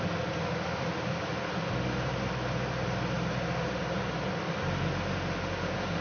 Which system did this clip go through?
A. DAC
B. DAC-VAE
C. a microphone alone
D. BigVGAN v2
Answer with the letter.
C